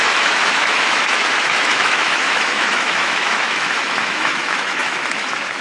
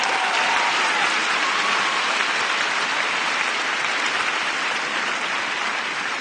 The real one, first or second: second